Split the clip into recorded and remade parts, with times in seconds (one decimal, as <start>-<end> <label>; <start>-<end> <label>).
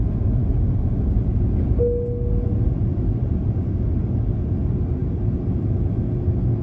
0.0-3.4 recorded; 3.4-4.6 remade; 4.6-5.0 recorded; 5.0-6.0 remade; 6.0-6.6 recorded